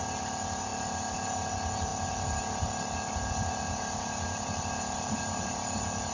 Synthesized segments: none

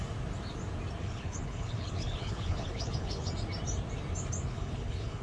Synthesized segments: 1.0-3.3 (codec, HILCodec); 4.5-5.2

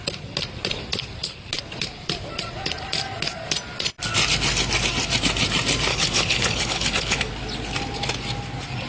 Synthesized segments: 5.9-7.3 (codec, HILCodec)

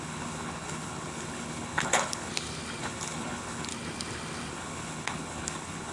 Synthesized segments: 0.0-2.3 (codec, HILCodec); 2.8-3.7; 4.5-5.9

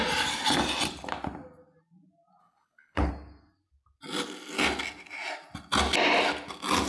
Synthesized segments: 2.4-3.1 (codec, HILCodec)

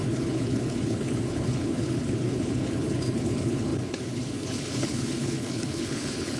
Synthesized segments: 0.0-6.4 (codec, HILCodec)

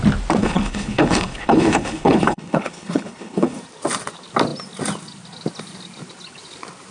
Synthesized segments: 0.4-3.6 (codec, HILCodec)